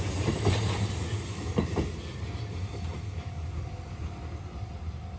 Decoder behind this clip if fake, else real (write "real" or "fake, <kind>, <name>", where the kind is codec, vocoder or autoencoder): real